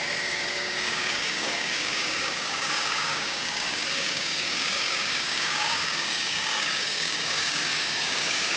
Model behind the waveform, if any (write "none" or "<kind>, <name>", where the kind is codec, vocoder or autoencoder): codec, DAC